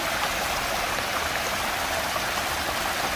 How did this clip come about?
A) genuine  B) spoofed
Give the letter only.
A